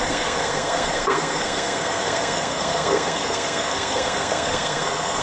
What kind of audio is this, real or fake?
fake